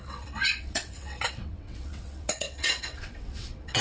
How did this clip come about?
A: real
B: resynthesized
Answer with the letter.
B